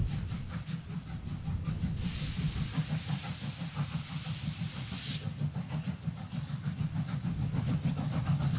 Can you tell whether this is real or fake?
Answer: real